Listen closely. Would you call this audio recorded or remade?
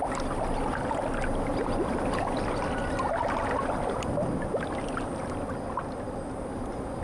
recorded